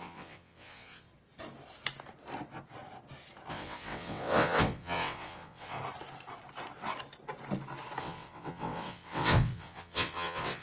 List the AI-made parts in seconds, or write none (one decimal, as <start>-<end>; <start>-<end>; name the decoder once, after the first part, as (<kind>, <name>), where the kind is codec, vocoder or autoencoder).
0.0-1.1 (vocoder, WaveNeXt); 3.5-5.8; 8.0-10.6